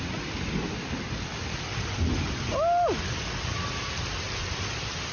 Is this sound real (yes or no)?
yes